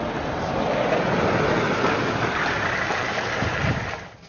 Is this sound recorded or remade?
recorded